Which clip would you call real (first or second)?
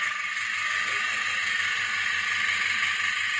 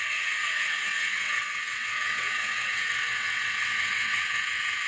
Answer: first